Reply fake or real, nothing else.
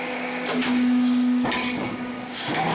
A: fake